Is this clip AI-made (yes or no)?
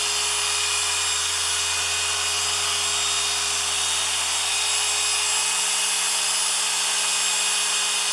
no